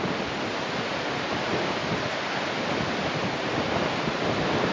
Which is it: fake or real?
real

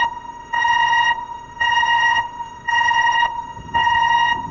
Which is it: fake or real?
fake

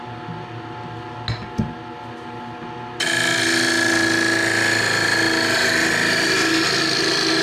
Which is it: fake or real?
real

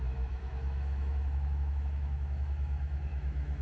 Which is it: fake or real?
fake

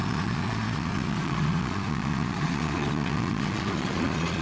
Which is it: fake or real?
fake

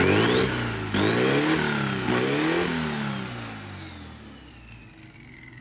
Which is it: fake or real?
real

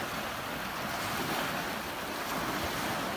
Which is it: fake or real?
real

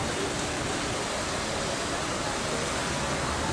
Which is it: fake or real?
real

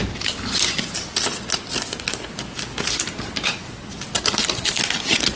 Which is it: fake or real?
real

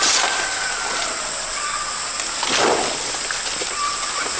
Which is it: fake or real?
real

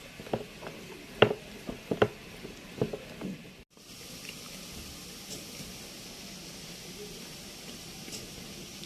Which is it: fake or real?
real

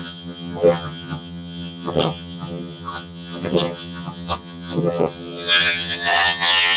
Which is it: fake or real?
fake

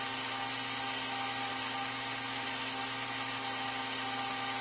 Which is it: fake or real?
real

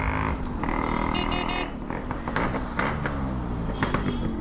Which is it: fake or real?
real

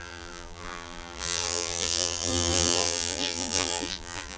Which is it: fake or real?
fake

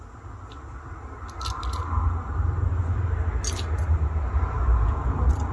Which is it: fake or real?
real